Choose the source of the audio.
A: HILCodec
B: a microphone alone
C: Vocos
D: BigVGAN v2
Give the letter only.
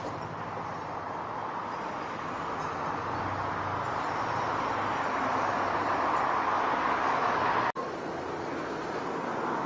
B